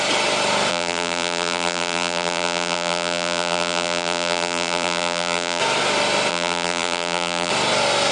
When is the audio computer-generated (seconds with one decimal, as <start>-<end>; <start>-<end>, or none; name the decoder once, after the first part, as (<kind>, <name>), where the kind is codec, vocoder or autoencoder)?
0.7-5.6 (vocoder, BigVGAN v2); 6.3-7.5